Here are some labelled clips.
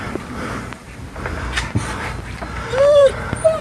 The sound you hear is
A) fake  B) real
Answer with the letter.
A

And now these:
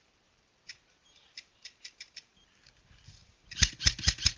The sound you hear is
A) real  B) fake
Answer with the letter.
B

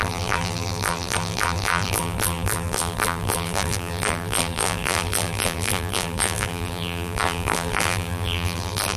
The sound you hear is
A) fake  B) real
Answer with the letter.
A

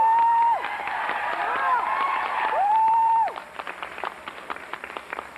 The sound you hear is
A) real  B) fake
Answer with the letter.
B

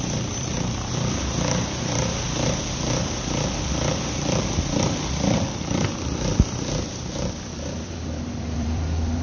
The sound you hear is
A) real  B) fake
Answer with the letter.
B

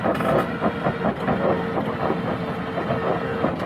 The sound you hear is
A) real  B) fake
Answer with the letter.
A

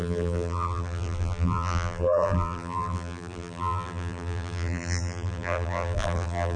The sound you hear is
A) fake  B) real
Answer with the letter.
A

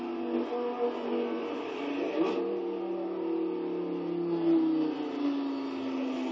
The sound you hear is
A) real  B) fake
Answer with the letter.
A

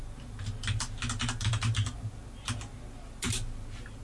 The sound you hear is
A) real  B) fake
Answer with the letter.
A